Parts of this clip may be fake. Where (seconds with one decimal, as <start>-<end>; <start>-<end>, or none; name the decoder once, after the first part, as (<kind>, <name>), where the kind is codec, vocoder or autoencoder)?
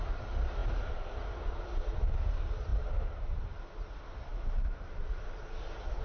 2.7-3.6 (vocoder, BigVGAN v2); 4.3-5.2